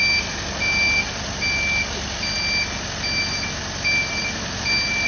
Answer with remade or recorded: recorded